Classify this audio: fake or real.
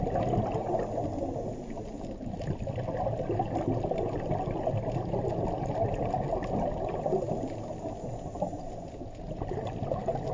real